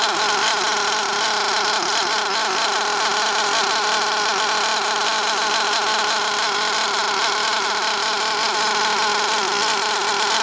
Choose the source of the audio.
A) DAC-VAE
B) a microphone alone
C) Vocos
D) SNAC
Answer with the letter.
B